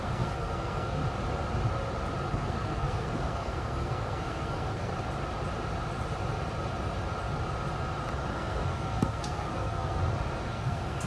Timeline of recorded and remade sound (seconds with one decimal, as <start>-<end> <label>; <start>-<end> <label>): 0.0-1.0 remade; 1.0-2.3 recorded; 2.3-4.9 remade; 4.9-8.3 recorded; 8.3-10.0 remade; 10.0-10.5 recorded; 10.5-11.1 remade